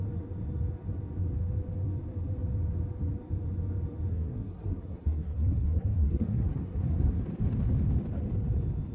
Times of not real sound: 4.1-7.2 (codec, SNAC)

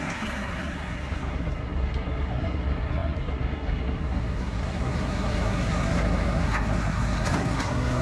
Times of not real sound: 0.0-8.0 (codec, SNAC)

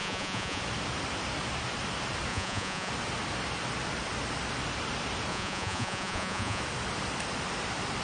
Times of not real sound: 0.0-0.6 (vocoder, Vocos); 2.3-2.9; 5.3-6.6

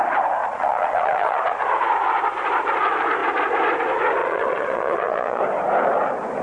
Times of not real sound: 0.4-1.6 (vocoder, Vocos); 4.2-5.4

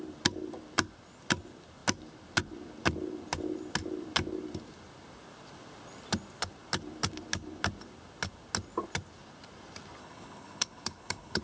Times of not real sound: 10.0-11.4 (codec, HILCodec)

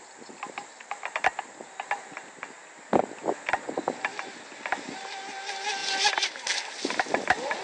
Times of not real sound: none